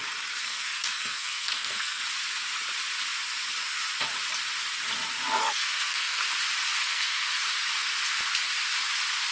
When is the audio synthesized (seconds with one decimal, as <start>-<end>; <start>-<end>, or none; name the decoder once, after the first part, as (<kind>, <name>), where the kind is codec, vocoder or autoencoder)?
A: 0.4-2.0 (codec, SNAC); 5.4-6.2; 6.8-7.4